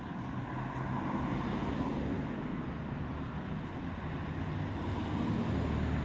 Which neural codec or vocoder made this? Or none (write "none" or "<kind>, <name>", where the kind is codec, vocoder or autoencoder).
none